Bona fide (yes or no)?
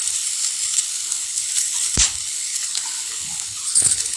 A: no